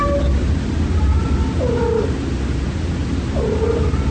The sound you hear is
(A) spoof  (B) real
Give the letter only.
B